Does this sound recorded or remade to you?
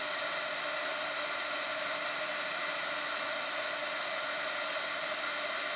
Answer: recorded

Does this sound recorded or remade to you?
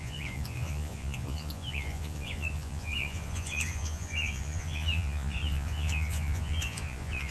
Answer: remade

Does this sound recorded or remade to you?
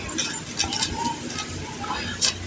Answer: recorded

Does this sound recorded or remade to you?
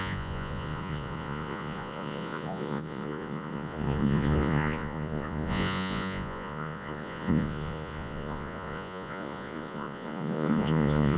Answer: remade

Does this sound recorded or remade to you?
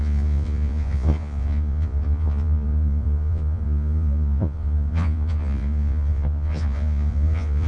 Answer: remade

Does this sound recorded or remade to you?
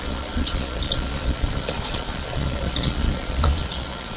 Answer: remade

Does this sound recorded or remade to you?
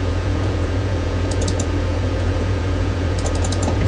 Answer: remade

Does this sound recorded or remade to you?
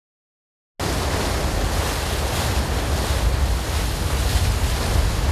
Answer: recorded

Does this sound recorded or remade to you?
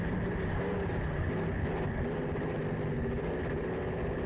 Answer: recorded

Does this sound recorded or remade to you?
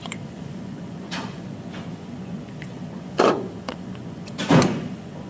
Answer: remade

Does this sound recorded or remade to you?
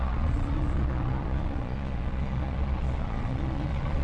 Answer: remade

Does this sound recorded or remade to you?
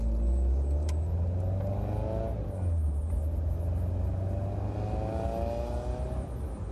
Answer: recorded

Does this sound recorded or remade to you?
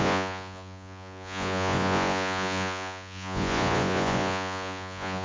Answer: remade